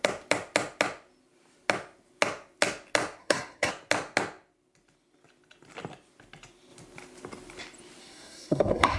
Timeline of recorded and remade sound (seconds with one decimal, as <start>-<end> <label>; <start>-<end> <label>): 0.0-3.2 recorded; 3.2-3.7 remade; 3.7-8.0 recorded; 8.0-9.0 remade